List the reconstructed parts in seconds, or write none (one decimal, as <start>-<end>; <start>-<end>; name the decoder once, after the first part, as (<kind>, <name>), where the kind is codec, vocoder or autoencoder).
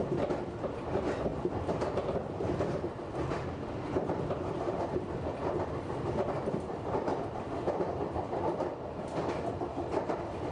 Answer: 1.3-6.2 (vocoder, BigVGAN v2); 7.1-8.8; 9.7-10.5